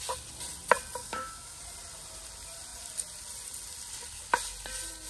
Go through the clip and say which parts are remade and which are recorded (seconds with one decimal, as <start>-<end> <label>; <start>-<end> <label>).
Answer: 0.0-1.0 recorded; 1.0-1.6 remade; 1.6-5.1 recorded